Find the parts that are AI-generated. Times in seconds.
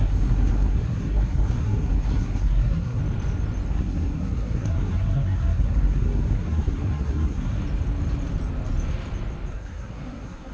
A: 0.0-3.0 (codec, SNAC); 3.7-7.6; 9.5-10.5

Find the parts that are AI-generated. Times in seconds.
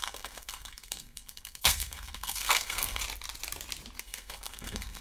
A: 0.0-3.0 (codec, SNAC); 4.0-5.0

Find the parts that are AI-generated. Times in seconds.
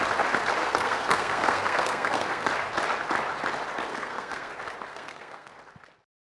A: 0.6-2.5 (codec, SNAC); 3.9-4.5; 4.9-5.5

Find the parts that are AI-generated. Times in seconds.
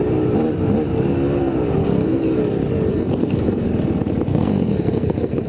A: 1.8-2.4 (codec, SNAC); 2.9-3.7; 4.3-5.5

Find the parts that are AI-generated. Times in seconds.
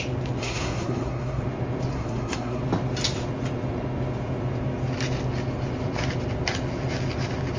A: 0.4-1.4 (codec, SNAC); 1.9-2.6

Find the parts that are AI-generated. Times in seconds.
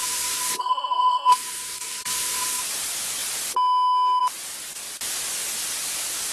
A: 0.0-2.6 (codec, SNAC)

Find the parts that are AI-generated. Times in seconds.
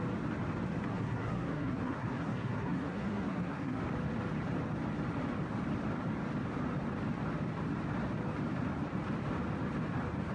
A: 0.9-3.8 (codec, SNAC)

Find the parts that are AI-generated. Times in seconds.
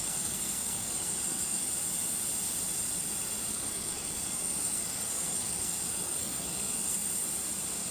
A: 0.0-1.6 (codec, SNAC); 3.5-7.1